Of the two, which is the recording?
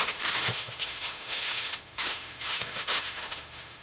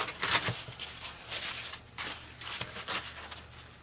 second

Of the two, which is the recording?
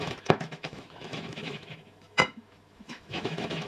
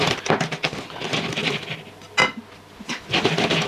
second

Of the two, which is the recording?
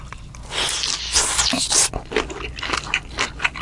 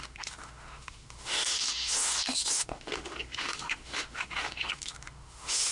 first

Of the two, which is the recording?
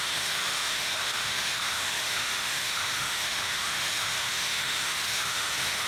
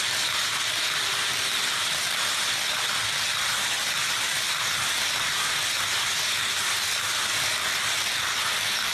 second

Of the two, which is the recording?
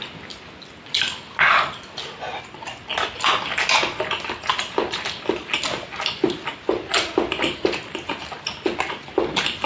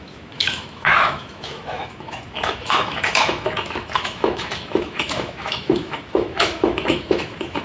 first